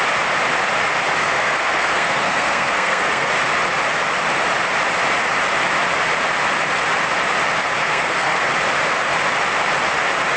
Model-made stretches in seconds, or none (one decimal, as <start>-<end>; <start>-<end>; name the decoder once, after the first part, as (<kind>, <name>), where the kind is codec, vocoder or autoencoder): 1.2-3.3 (codec, SNAC); 7.8-8.4